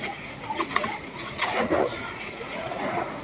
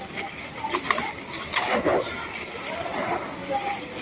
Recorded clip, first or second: second